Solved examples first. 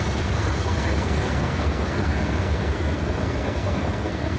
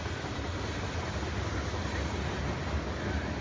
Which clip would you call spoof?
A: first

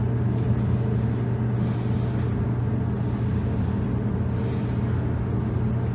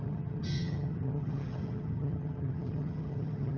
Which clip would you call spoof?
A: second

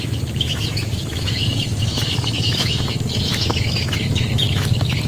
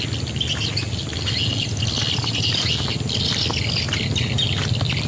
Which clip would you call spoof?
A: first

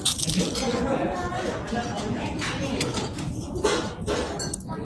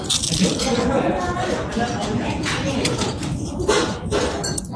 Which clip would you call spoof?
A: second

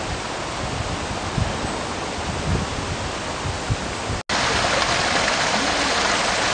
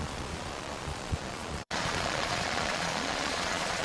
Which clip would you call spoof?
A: second